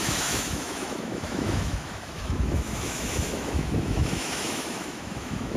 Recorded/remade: remade